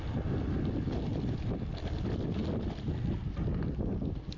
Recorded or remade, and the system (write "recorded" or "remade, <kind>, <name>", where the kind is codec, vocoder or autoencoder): recorded